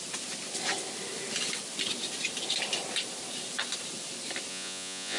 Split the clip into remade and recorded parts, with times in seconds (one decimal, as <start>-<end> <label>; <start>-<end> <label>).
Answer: 0.0-4.5 recorded; 4.5-5.2 remade